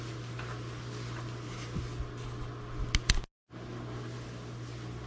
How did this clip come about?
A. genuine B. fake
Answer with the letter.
A